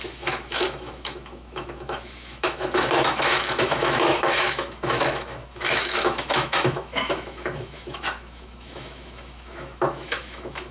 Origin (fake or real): fake